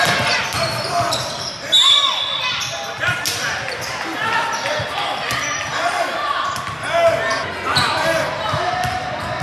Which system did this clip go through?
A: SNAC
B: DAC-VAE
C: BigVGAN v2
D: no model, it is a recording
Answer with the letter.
D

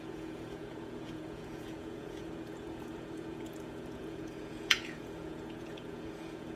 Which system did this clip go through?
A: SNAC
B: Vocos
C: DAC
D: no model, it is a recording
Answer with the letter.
B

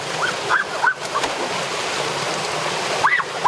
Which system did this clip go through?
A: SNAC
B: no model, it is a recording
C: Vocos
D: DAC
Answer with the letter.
B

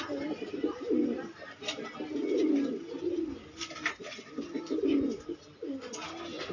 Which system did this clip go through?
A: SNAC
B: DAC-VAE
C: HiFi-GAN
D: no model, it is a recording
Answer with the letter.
D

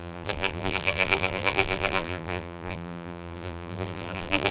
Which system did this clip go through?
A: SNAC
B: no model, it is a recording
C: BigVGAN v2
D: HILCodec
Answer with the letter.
C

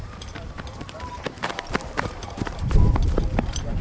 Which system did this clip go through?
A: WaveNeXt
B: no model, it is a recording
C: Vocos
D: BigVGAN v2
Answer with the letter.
D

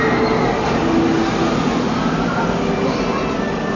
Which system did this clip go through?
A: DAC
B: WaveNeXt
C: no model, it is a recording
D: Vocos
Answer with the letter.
C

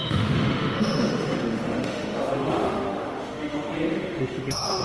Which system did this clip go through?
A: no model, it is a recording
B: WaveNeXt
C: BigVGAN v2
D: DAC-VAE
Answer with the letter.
D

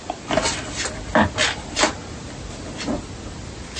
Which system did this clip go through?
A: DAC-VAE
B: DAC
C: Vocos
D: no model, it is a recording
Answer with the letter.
D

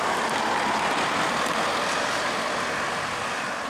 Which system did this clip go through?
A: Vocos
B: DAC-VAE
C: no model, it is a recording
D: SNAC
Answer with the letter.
C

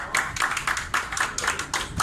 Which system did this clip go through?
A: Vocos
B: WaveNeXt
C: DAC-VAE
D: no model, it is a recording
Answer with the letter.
D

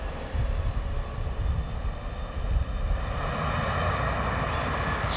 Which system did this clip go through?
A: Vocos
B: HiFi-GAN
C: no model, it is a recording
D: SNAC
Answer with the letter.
C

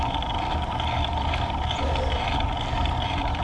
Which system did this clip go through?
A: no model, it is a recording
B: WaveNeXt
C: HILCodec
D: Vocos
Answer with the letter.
A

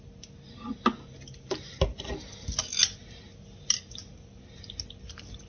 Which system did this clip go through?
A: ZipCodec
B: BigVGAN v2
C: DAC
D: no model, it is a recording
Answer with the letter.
D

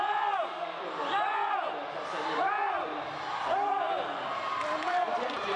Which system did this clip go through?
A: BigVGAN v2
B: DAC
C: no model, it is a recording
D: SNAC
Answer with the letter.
C